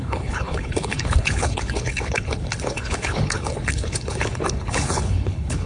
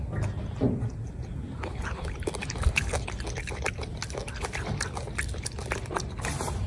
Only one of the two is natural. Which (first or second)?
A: second